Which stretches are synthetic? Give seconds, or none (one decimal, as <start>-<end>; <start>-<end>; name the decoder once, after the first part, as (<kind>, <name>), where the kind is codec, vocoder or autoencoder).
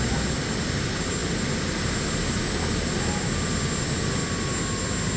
none